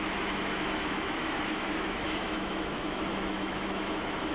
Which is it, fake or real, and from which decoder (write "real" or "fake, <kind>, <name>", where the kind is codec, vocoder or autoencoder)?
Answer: fake, autoencoder, DAC-VAE